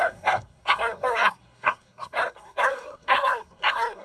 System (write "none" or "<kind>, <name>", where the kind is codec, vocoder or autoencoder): codec, SNAC